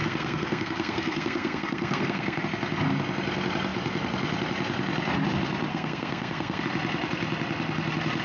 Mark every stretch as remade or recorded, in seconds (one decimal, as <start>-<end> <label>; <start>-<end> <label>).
0.0-2.4 remade; 2.4-5.7 recorded; 5.7-6.6 remade; 6.6-8.2 recorded